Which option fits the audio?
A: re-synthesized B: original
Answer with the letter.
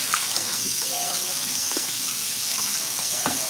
A